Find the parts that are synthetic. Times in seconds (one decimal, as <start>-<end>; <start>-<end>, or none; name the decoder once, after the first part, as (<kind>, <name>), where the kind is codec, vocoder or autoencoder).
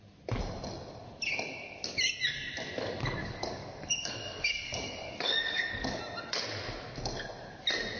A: 3.2-6.0 (codec, DAC)